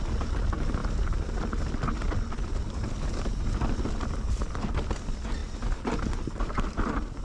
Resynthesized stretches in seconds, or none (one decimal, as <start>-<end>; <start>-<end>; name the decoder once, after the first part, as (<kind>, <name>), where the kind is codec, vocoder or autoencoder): 0.8-1.4 (vocoder, BigVGAN v2)